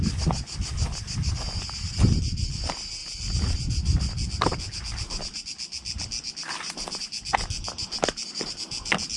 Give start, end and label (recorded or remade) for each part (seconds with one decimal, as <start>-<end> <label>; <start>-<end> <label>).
0.0-9.2 recorded